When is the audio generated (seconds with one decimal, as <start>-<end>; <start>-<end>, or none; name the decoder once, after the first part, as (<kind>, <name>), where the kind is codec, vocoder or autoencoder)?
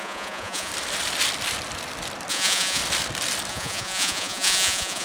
0.0-0.7 (vocoder, Vocos); 2.3-2.8; 3.5-5.0